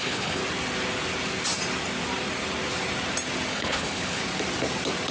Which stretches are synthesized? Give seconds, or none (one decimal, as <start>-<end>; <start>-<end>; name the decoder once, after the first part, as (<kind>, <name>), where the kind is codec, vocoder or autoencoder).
0.0-0.4 (codec, HILCodec); 3.5-4.2